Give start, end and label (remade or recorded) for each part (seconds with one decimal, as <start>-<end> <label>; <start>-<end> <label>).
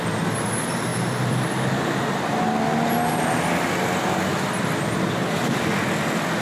0.0-6.4 recorded